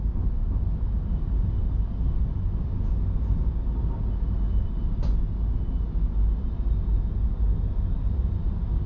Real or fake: real